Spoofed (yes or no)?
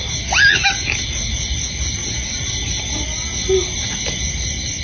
no